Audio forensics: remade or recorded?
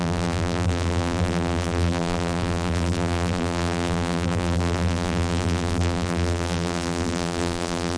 remade